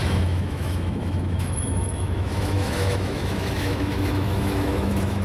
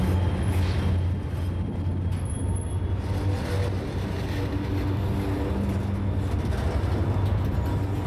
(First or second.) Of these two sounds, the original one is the second